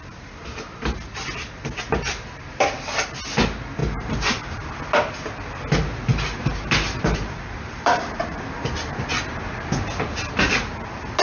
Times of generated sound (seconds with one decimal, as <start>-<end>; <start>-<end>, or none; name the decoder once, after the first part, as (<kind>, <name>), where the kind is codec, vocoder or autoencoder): 3.8-4.7 (vocoder, BigVGAN v2); 6.1-9.2